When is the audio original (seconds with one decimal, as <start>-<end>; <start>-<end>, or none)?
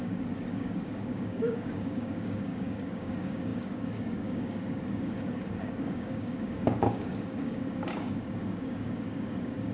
none